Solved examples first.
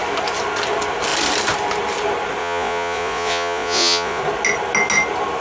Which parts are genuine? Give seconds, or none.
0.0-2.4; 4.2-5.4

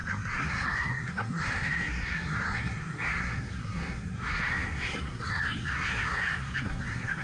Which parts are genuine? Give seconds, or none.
none

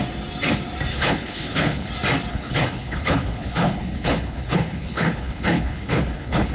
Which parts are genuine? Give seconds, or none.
0.0-0.9; 1.9-2.3

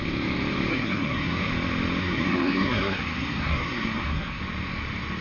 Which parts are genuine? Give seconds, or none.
0.0-0.7; 1.5-2.0; 4.4-5.2

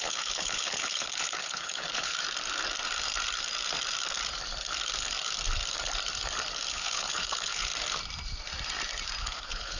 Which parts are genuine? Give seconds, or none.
2.1-6.7; 7.7-9.2

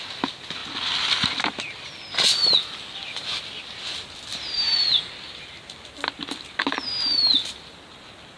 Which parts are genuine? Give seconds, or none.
0.0-8.4

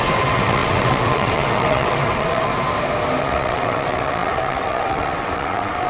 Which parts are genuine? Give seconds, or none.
2.5-3.2

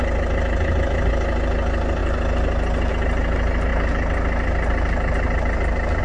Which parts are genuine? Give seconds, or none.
0.0-6.0